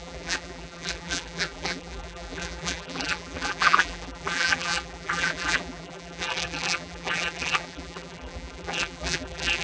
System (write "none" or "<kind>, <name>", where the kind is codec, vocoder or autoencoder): vocoder, BigVGAN v2